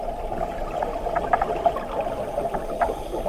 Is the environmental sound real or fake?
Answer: real